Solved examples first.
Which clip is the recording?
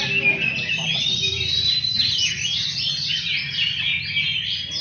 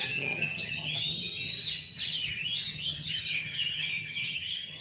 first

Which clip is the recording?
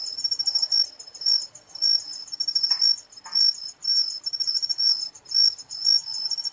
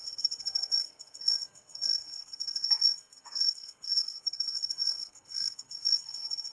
first